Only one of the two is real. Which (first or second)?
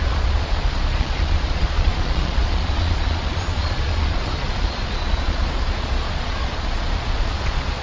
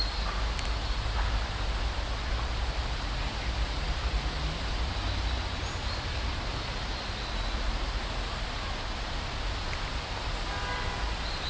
second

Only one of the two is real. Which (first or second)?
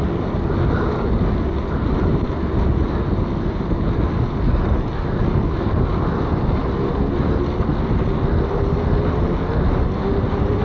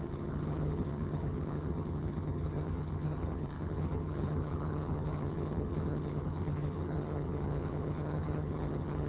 first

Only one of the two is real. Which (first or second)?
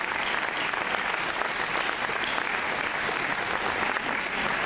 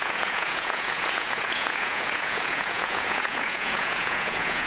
first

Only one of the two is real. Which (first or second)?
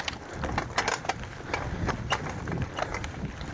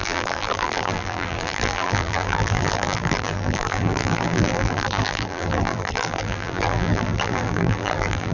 first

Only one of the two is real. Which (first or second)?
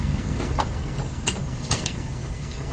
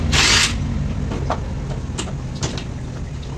second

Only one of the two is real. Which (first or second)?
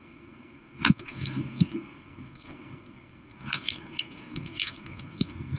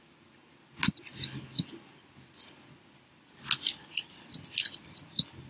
second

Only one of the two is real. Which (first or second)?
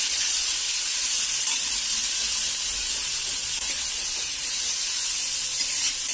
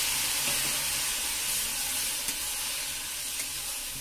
second